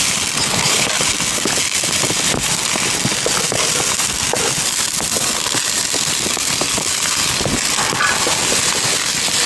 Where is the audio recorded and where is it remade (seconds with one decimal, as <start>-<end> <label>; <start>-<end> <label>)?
0.0-0.4 recorded; 0.4-0.9 remade; 0.9-9.5 recorded